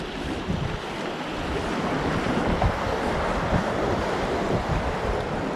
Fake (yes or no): no